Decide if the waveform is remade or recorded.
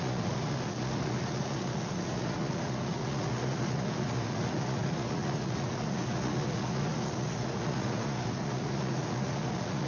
remade